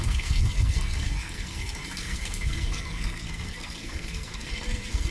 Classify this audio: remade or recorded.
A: remade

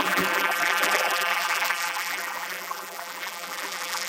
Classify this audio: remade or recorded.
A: remade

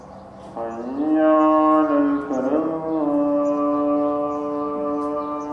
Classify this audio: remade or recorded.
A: recorded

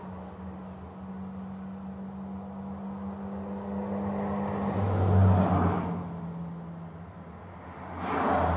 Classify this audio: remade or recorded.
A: recorded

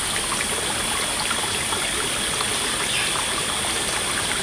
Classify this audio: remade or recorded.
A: recorded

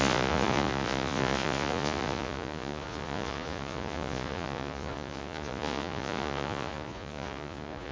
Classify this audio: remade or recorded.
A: remade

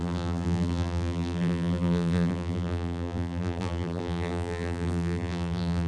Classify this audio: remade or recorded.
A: remade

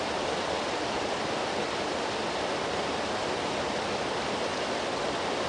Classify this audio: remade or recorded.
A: recorded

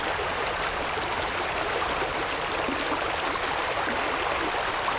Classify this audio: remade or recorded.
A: recorded